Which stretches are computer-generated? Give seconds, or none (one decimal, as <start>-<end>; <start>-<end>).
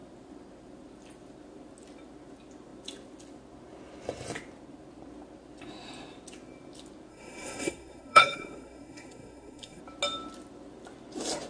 7.1-9.8